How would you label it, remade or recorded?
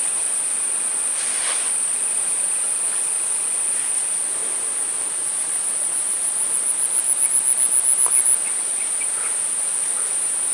recorded